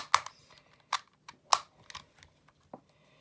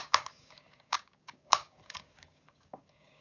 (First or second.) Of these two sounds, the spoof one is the second